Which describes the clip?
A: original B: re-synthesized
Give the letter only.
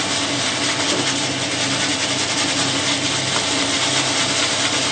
A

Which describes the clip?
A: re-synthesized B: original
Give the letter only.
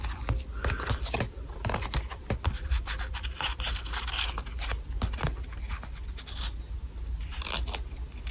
B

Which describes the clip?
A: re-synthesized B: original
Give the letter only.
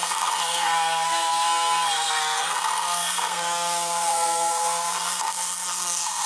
A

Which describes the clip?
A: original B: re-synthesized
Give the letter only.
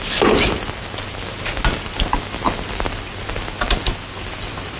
A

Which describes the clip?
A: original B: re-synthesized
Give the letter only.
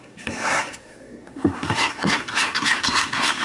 B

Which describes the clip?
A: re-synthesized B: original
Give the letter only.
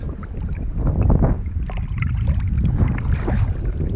B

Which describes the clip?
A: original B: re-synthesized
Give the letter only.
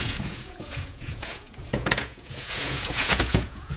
B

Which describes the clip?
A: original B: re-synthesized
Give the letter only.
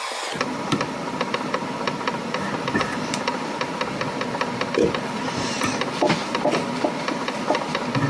B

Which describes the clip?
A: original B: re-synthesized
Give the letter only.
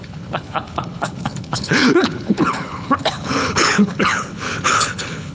B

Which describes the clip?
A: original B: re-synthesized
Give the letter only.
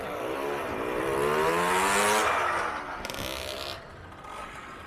A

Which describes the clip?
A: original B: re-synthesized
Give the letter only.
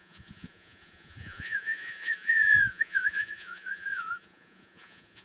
B